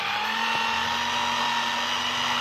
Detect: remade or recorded recorded